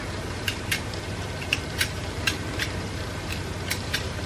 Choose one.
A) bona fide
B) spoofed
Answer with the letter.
B